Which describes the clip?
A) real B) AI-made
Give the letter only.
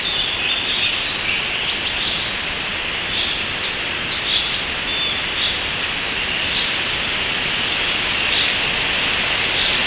A